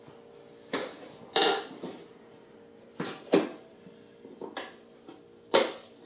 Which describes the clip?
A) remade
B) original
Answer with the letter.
B